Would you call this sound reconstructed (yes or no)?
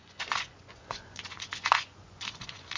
yes